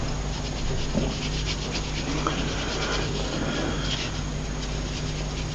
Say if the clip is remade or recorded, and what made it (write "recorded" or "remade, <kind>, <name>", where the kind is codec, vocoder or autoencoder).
recorded